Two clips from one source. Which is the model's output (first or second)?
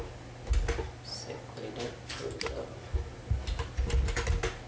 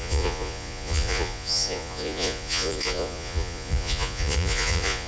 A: second